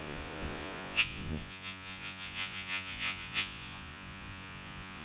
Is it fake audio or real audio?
fake